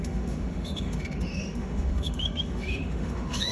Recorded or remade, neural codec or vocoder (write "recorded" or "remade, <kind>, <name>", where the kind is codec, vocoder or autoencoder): remade, autoencoder, DAC-VAE